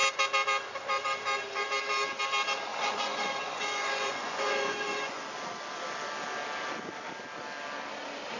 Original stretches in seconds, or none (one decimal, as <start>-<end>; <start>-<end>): 0.0-2.7; 5.2-8.4